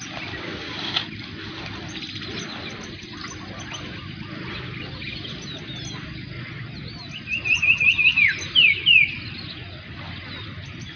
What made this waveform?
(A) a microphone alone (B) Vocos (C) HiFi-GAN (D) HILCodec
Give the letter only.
A